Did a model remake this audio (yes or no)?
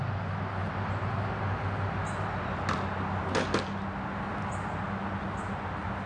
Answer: no